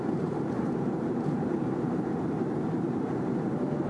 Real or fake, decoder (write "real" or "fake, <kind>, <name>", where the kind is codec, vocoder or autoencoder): fake, vocoder, BigVGAN v2